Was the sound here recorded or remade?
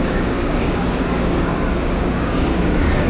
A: remade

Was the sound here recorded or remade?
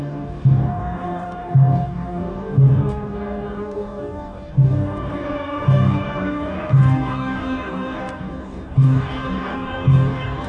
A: remade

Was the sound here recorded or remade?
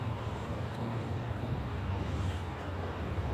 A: remade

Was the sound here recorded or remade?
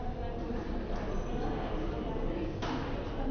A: recorded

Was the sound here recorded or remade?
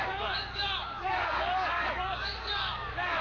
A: remade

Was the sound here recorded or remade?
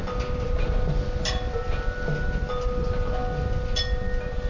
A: recorded